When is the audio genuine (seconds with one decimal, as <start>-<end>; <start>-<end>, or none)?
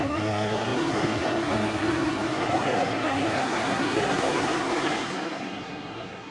none